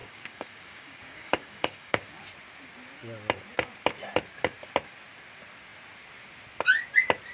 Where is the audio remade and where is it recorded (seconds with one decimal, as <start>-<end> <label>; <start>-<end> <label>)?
0.0-2.2 remade; 2.2-7.3 recorded